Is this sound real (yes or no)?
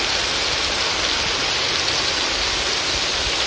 yes